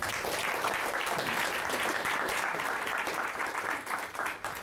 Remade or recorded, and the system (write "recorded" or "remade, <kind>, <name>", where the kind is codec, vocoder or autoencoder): remade, vocoder, BigVGAN v2